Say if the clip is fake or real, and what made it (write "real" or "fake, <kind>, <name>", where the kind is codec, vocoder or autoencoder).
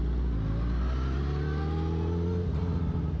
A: real